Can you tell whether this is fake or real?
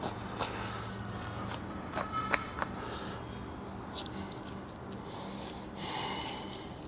real